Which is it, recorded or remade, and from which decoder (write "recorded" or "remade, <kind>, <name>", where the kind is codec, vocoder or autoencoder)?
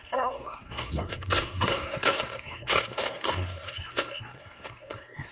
remade, codec, SNAC